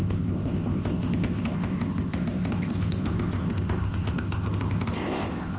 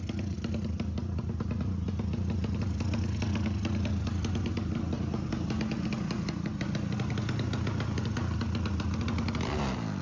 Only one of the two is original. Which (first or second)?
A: second